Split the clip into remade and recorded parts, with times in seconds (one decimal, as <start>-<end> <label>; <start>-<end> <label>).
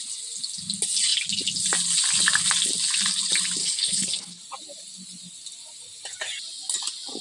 0.0-3.6 recorded; 3.6-4.4 remade; 4.4-7.2 recorded